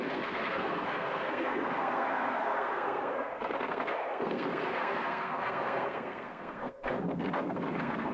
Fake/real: fake